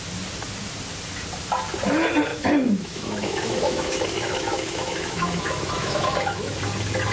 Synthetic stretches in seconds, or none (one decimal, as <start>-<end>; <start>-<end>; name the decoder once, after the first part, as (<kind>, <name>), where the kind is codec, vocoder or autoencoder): 2.3-6.6 (autoencoder, DAC-VAE)